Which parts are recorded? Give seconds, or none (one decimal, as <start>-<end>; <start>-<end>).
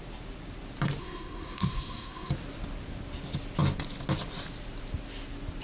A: 0.0-1.0; 2.3-5.6